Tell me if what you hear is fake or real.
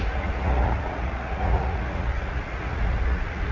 fake